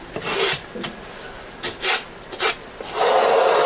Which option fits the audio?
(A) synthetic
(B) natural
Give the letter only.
B